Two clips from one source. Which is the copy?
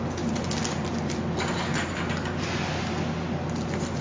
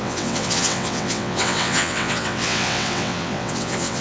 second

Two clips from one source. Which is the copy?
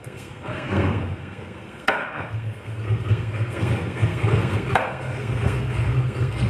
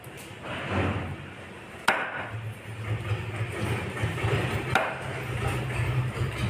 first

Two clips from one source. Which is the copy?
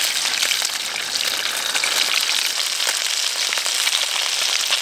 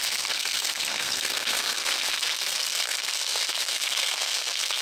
second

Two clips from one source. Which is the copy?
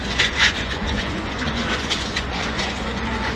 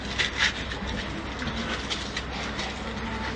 first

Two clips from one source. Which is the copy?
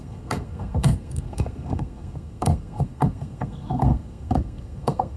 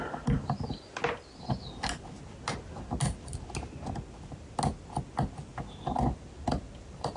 first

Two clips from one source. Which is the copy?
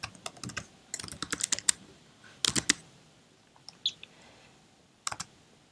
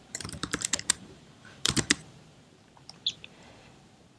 second